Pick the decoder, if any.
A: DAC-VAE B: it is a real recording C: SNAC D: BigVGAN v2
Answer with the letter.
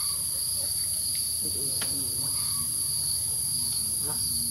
B